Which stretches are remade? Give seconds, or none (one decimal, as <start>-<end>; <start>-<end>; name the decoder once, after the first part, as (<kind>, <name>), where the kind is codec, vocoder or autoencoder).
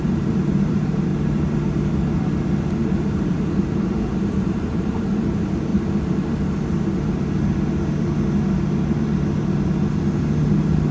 0.0-1.1 (vocoder, BigVGAN v2); 3.6-5.7; 10.4-10.9